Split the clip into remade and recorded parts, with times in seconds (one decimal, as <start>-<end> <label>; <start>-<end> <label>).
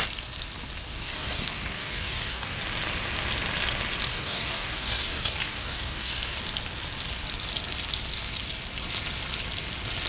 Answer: 0.0-0.9 recorded; 0.9-2.6 remade; 2.6-4.1 recorded; 4.1-6.4 remade; 6.4-10.1 recorded